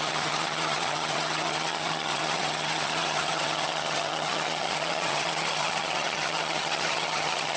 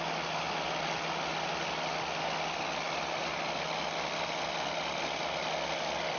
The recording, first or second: second